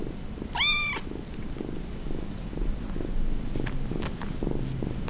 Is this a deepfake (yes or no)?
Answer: no